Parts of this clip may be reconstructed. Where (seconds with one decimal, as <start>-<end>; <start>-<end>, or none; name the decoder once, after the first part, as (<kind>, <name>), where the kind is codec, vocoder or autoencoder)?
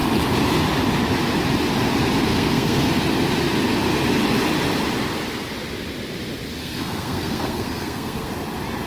2.3-2.9 (codec, SNAC); 6.6-8.3